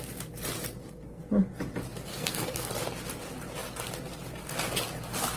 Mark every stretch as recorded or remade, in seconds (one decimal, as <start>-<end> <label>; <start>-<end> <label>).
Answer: 0.0-0.8 recorded; 0.8-1.3 remade; 1.3-2.1 recorded; 2.1-2.7 remade; 2.7-5.4 recorded